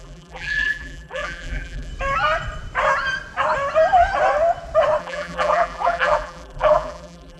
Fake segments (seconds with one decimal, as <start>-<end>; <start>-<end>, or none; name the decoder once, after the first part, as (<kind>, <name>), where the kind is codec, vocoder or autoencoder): 0.0-1.9 (vocoder, BigVGAN v2); 5.0-7.4